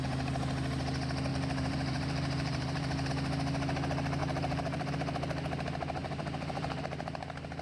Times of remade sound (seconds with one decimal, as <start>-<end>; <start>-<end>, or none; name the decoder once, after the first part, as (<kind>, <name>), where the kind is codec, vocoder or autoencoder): 1.3-3.1 (vocoder, BigVGAN v2); 4.2-4.9; 6.0-6.8